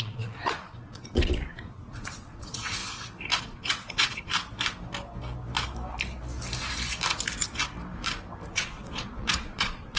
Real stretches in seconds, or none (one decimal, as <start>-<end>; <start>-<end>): 2.8-3.4; 4.3-8.5